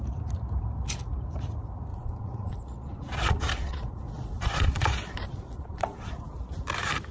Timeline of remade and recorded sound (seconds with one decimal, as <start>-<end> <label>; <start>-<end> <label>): 0.0-1.9 recorded; 1.9-6.1 remade; 6.1-7.1 recorded